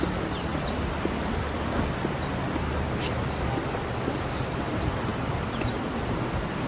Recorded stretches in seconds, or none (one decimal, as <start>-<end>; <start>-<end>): 0.0-6.7